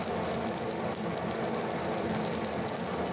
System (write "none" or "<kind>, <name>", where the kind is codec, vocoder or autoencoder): none